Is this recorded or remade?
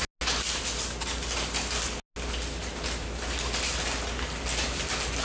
recorded